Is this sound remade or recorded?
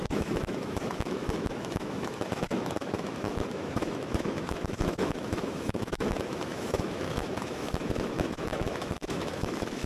remade